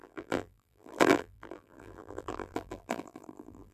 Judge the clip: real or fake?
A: fake